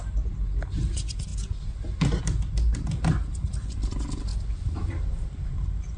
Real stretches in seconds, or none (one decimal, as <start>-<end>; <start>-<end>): 0.0-6.0